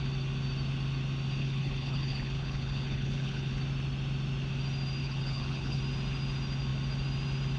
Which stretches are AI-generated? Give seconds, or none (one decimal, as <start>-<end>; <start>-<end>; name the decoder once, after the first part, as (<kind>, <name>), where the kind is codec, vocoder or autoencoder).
1.4-3.5 (codec, HILCodec); 5.0-5.8